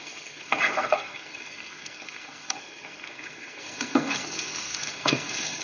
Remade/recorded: remade